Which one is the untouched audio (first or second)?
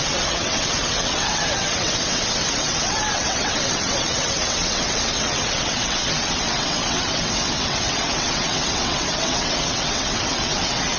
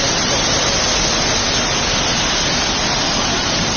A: second